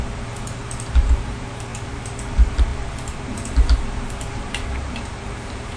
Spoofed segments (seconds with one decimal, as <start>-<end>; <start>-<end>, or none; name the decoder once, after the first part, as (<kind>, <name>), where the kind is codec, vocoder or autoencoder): 0.0-1.7 (vocoder, BigVGAN v2); 2.3-5.8